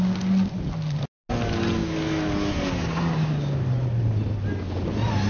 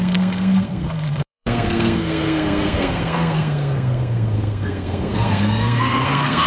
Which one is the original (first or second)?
first